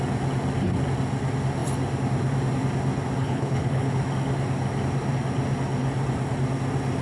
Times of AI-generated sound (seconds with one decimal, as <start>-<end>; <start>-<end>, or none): 3.2-4.0